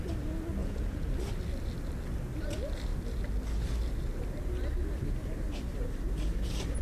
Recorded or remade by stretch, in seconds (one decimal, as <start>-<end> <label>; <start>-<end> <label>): 0.0-0.6 recorded; 0.6-1.1 remade; 1.1-6.8 recorded